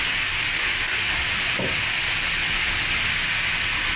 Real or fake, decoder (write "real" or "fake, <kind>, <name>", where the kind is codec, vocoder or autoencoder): real